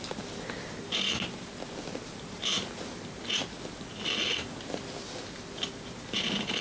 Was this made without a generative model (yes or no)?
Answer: yes